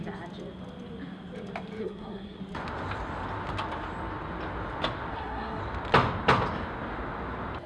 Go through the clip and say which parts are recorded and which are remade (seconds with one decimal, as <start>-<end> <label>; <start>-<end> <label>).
0.0-1.8 recorded; 1.8-2.4 remade; 2.4-5.1 recorded; 5.1-5.6 remade; 5.6-7.7 recorded